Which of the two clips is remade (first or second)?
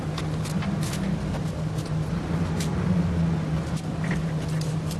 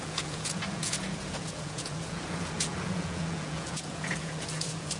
second